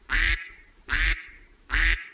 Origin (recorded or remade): remade